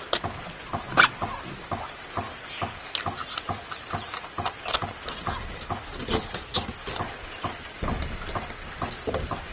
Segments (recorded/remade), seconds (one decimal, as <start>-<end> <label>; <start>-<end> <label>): 0.0-9.5 recorded